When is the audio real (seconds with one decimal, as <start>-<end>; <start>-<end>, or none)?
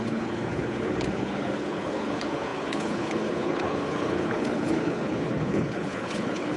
none